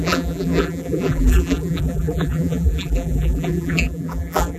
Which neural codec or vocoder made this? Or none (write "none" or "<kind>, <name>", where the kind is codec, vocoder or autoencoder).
vocoder, BigVGAN v2